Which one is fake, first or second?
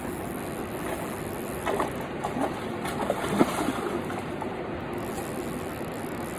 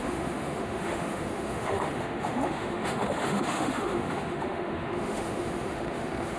second